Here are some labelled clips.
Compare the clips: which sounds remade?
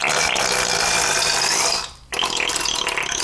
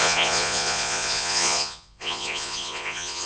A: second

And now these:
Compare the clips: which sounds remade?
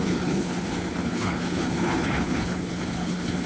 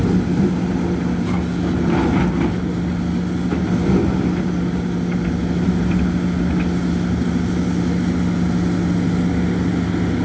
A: first